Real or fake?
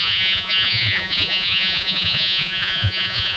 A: fake